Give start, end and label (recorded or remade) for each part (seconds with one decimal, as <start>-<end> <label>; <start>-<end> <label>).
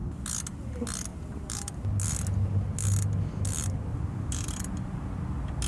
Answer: 0.0-1.1 recorded; 1.1-1.7 remade; 1.7-3.9 recorded; 3.9-4.5 remade; 4.5-5.7 recorded